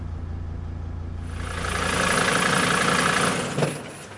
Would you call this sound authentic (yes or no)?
yes